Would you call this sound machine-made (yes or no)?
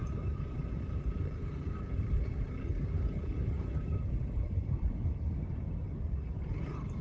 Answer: yes